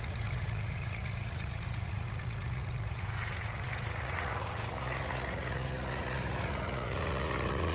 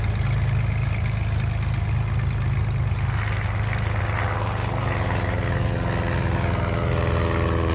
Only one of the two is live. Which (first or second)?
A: second